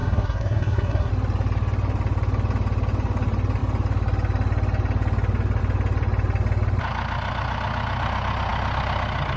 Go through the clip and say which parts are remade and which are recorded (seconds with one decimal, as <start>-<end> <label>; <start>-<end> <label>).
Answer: 0.0-1.1 remade; 1.1-9.4 recorded